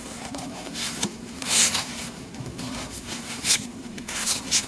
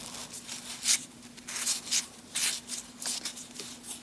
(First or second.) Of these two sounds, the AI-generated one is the first